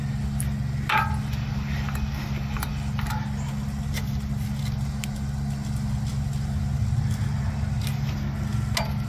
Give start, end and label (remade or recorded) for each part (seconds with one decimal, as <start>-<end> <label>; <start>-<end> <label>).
0.0-9.1 recorded